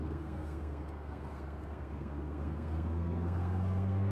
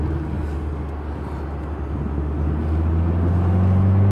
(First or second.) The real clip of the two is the second